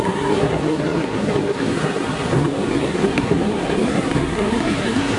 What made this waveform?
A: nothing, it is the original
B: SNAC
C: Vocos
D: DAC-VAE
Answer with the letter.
B